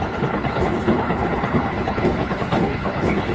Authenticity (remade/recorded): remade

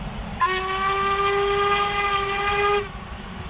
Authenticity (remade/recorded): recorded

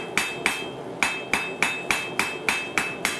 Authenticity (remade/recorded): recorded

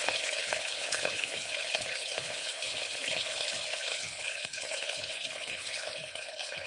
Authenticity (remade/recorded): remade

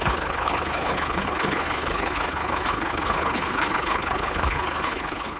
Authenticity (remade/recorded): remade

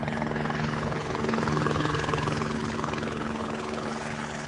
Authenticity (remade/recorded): remade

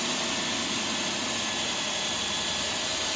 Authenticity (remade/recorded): recorded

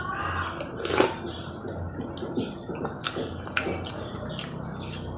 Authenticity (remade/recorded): recorded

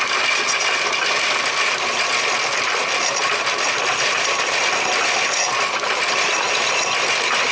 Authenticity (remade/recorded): recorded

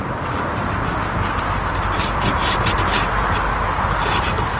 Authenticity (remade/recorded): recorded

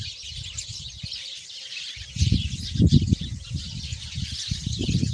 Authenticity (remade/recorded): recorded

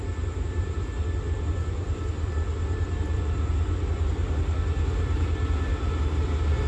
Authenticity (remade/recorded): recorded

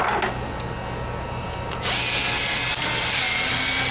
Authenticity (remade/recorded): recorded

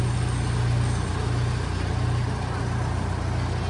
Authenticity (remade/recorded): recorded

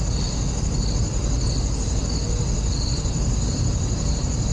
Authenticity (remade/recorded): recorded